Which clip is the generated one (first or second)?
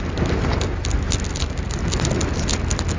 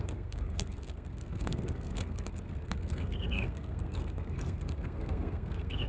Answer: second